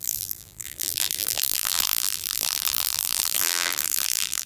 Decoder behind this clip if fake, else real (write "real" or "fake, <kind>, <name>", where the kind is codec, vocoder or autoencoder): fake, vocoder, BigVGAN v2